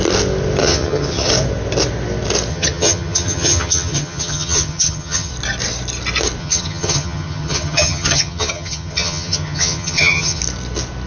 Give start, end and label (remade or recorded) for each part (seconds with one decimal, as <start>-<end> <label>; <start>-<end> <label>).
0.0-0.6 recorded; 0.6-1.3 remade; 1.3-2.5 recorded; 2.5-5.3 remade; 5.3-6.4 recorded; 6.4-10.4 remade; 10.4-11.1 recorded